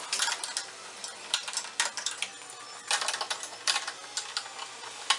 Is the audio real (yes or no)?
yes